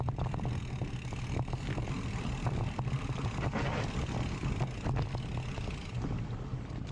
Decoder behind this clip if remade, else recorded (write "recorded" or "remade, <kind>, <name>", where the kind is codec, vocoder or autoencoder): recorded